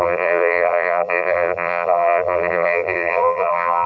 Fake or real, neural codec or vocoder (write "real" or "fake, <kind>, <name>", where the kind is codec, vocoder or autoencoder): fake, vocoder, BigVGAN v2